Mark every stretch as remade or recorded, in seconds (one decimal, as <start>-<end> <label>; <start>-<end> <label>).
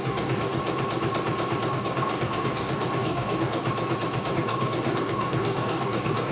0.0-0.6 remade; 0.6-1.7 recorded; 1.7-3.6 remade; 3.6-4.3 recorded; 4.3-6.3 remade